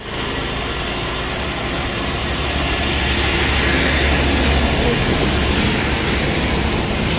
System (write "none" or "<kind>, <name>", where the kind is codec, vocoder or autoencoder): none